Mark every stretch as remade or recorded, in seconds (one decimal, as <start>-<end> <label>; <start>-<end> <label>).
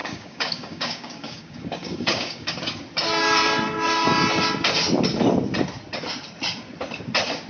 0.0-2.6 remade; 2.6-7.5 recorded